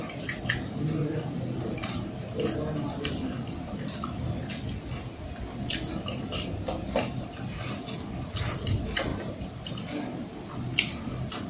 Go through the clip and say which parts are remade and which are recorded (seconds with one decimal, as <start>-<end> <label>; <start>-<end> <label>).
0.0-9.1 recorded; 9.1-9.7 remade; 9.7-11.5 recorded